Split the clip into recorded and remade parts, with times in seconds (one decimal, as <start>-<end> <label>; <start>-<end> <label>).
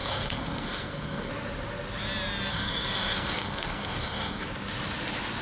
0.0-1.3 remade; 1.3-2.5 recorded; 2.5-4.4 remade; 4.4-5.4 recorded